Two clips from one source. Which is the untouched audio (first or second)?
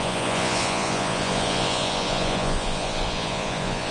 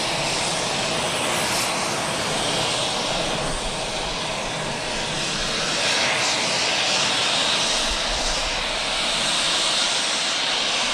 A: second